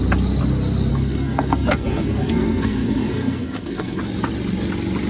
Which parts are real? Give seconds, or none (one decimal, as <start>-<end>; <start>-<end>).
0.0-0.9; 4.0-5.1